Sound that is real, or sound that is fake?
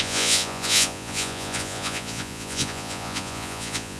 fake